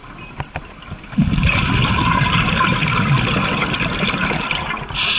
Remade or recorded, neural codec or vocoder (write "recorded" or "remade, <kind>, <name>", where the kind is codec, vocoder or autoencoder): recorded